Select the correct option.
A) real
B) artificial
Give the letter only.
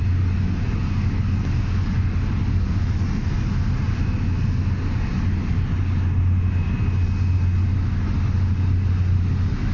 A